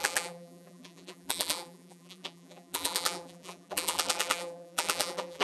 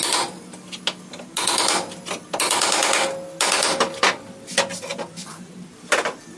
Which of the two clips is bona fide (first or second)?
second